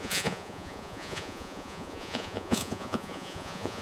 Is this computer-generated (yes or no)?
yes